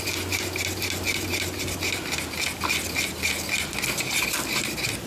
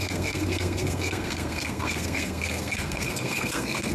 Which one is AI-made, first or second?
second